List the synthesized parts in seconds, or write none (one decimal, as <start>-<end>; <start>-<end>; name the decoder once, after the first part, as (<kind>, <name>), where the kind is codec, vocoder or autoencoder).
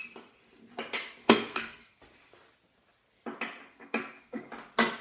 1.2-2.0 (codec, SNAC); 3.7-4.5